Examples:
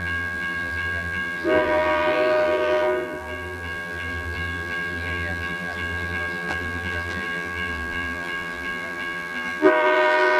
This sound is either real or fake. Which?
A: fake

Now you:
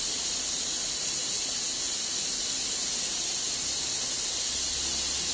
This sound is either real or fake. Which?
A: real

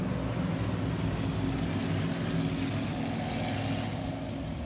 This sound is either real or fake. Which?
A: real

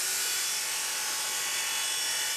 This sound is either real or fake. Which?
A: real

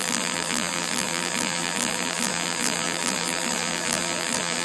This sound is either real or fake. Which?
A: fake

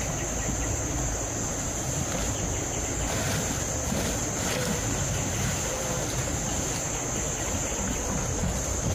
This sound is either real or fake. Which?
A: real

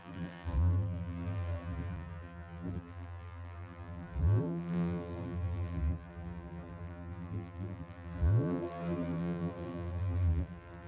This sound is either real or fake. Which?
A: fake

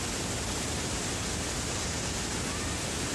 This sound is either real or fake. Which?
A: real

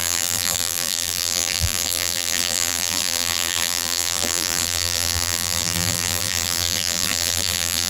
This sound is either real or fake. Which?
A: fake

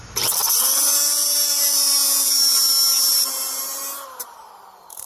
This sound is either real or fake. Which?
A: fake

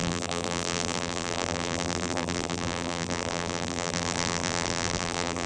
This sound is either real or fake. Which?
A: fake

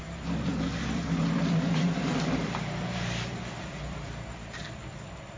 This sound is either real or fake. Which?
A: fake